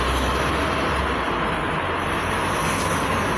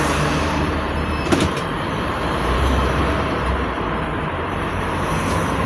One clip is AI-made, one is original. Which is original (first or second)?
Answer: first